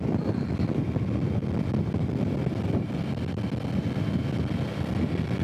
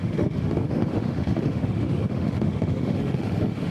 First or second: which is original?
first